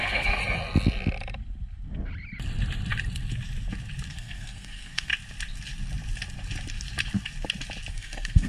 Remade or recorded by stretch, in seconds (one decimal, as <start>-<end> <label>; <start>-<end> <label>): 0.0-0.4 remade; 0.4-4.1 recorded; 4.1-5.1 remade; 5.1-7.9 recorded; 7.9-8.5 remade